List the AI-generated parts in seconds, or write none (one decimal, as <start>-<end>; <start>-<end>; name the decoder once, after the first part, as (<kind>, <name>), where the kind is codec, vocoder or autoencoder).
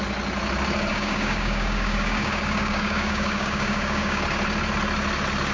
0.9-4.2 (codec, DAC)